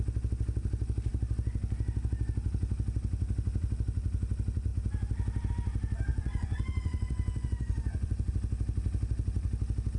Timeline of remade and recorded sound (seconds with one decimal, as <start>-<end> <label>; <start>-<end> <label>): 0.0-6.1 recorded; 6.1-8.3 remade; 8.3-10.0 recorded